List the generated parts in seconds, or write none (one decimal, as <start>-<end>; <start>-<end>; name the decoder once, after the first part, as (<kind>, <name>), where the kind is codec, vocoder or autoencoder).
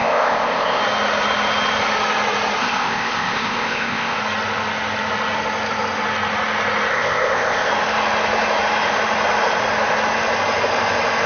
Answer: 0.0-0.8 (codec, ZipCodec); 2.6-4.2; 6.9-7.7